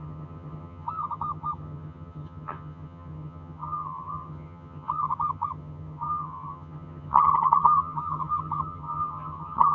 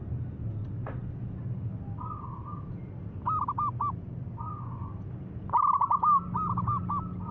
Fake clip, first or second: first